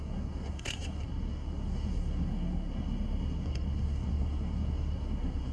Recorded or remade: remade